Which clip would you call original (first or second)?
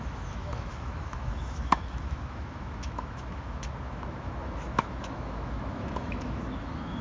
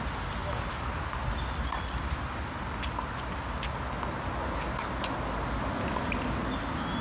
second